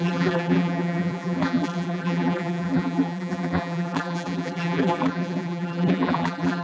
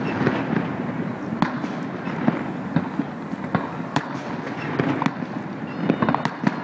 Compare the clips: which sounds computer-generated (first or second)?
first